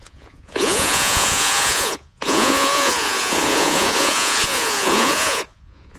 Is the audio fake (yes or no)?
yes